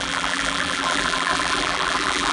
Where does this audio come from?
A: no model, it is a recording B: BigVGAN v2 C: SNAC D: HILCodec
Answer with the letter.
B